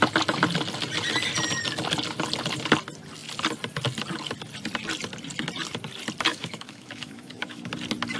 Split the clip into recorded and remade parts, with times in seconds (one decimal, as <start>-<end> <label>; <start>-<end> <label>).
0.0-6.3 recorded; 6.3-7.7 remade; 7.7-8.2 recorded